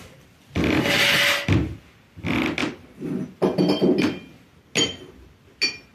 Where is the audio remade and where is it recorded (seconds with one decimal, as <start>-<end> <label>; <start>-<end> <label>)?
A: 0.0-5.9 recorded